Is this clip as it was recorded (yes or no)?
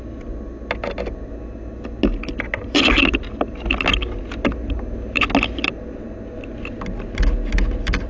yes